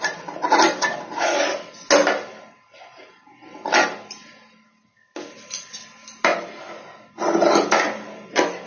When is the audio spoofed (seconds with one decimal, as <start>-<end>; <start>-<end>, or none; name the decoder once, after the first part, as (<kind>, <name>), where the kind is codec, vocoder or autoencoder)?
none